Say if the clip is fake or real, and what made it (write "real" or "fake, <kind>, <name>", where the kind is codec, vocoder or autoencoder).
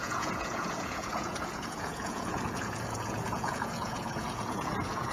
fake, vocoder, Vocos